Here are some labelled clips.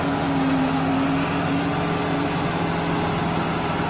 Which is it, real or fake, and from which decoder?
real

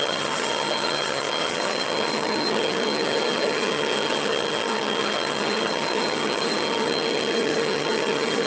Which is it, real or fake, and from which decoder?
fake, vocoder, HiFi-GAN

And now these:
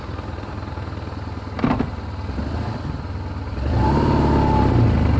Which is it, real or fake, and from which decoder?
real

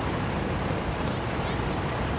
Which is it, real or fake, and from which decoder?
real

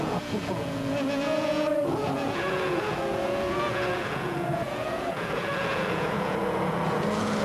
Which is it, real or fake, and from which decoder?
fake, vocoder, Vocos